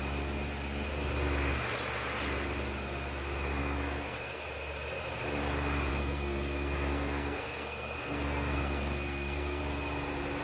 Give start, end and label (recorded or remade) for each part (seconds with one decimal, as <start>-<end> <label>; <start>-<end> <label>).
0.0-3.6 recorded; 3.6-4.4 remade; 4.4-5.9 recorded; 5.9-9.6 remade; 9.6-10.4 recorded